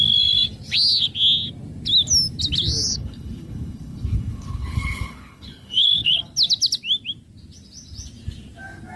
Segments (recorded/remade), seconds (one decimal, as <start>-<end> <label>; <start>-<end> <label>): 0.0-2.9 recorded; 2.9-6.2 remade; 6.2-9.0 recorded